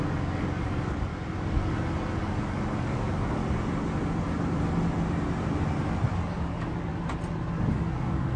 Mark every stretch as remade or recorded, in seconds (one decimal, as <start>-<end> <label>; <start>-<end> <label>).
0.0-1.1 remade; 1.1-2.2 recorded; 2.2-3.4 remade; 3.4-6.4 recorded; 6.4-6.9 remade; 6.9-7.6 recorded; 7.6-8.4 remade

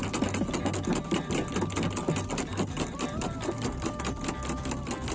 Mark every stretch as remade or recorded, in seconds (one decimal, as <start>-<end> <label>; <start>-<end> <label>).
0.0-5.1 recorded

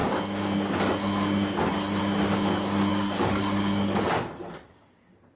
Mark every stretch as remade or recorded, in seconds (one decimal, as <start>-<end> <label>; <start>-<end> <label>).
0.0-2.9 recorded; 2.9-4.4 remade; 4.4-5.4 recorded

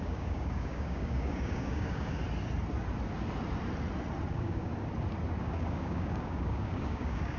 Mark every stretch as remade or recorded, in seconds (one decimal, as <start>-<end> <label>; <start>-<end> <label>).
0.0-2.2 remade; 2.2-4.3 recorded; 4.3-4.7 remade; 4.7-5.4 recorded; 5.4-7.4 remade

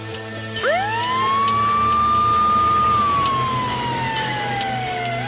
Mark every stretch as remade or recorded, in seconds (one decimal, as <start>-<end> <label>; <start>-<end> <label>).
0.0-3.7 recorded; 3.7-5.3 remade

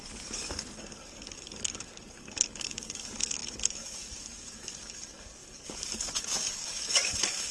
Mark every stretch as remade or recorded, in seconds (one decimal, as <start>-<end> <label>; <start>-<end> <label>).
0.0-7.5 remade

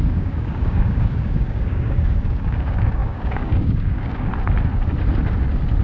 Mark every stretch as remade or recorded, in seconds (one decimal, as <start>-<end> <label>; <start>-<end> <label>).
0.0-4.3 remade; 4.3-5.8 recorded